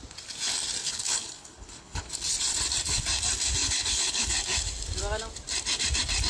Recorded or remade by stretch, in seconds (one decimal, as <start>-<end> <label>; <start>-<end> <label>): 0.0-0.8 recorded; 0.8-2.1 remade; 2.1-3.6 recorded; 3.6-4.3 remade; 4.3-6.3 recorded